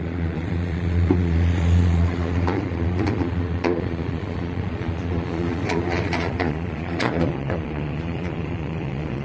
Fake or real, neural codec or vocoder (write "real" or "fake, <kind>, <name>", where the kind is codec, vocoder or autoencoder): fake, vocoder, Vocos